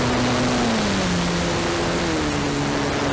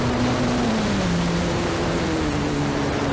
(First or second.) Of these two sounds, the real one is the first